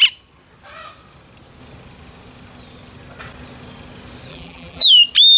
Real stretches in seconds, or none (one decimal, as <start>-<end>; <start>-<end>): 0.0-4.3; 5.0-5.4

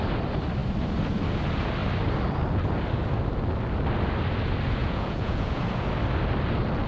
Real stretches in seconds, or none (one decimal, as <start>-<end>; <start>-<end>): 0.0-4.8; 5.6-6.9

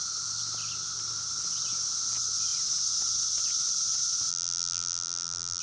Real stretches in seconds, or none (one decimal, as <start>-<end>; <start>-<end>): 0.0-4.3

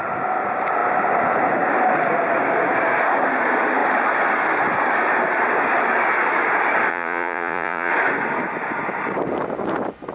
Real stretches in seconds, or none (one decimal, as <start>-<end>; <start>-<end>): 0.0-6.9; 7.9-10.1

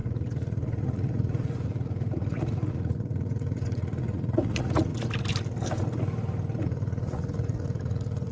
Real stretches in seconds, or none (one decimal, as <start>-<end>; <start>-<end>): 4.9-6.6

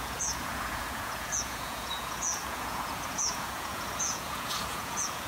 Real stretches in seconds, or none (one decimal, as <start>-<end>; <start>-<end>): none

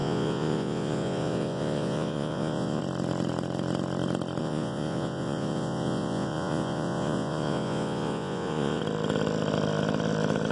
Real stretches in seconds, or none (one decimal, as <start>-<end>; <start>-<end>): 2.8-4.4; 8.8-10.5